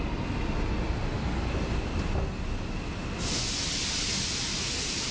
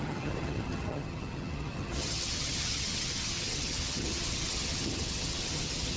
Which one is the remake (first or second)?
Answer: second